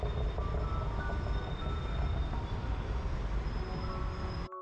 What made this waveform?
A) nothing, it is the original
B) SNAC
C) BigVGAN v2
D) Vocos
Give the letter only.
A